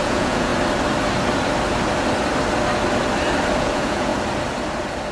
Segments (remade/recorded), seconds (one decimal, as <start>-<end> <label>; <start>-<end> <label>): 0.0-0.5 remade; 0.5-3.6 recorded; 3.6-4.1 remade; 4.1-5.1 recorded

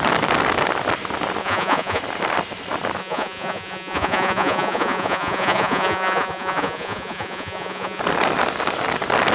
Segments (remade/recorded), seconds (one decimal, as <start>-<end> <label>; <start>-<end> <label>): 0.0-1.4 recorded; 1.4-2.0 remade; 2.0-3.0 recorded; 3.0-8.0 remade; 8.0-9.3 recorded

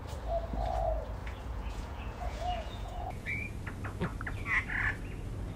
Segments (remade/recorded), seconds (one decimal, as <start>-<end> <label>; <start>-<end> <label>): 0.0-1.2 recorded; 1.2-3.6 remade; 3.6-5.6 recorded

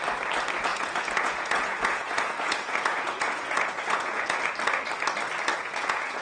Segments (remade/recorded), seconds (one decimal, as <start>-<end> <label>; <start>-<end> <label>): 0.0-0.7 recorded; 0.7-4.4 remade; 4.4-5.5 recorded; 5.5-6.2 remade

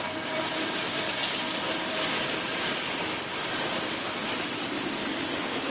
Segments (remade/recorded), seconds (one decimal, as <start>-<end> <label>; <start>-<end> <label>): 0.0-5.7 recorded

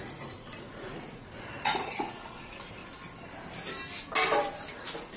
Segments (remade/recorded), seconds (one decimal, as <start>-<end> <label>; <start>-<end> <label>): 0.0-2.8 remade; 2.8-4.7 recorded; 4.7-5.2 remade